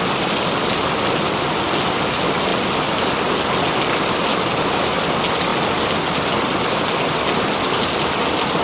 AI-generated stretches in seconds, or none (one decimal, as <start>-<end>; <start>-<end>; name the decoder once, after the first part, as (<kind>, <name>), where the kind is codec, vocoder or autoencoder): none